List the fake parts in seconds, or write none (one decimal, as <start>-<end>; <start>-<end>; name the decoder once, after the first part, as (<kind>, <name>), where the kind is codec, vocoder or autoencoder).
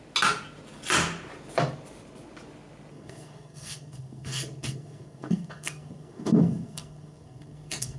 2.9-8.0 (codec, SNAC)